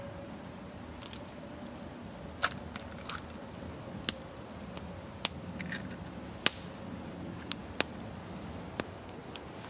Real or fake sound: real